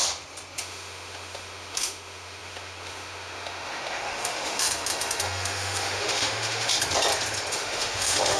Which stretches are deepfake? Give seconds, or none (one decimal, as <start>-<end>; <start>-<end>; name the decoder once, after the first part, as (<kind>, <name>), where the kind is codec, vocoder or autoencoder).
0.6-6.7 (autoencoder, DAC-VAE); 7.5-8.4